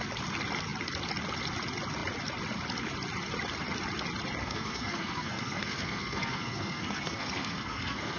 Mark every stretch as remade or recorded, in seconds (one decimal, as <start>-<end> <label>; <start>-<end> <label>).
0.0-4.4 recorded; 4.4-8.2 remade

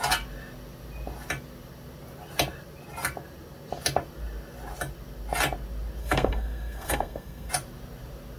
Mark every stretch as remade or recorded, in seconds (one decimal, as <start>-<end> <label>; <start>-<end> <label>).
0.0-6.0 recorded; 6.0-7.5 remade; 7.5-8.4 recorded

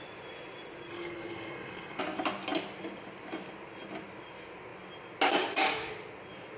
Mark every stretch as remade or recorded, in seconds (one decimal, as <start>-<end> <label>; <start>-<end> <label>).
0.0-0.9 recorded; 0.9-2.0 remade; 2.0-6.6 recorded